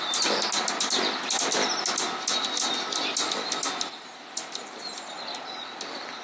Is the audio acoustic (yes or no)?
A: yes